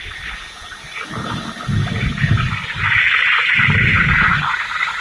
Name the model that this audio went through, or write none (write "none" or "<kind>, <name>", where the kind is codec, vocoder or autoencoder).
none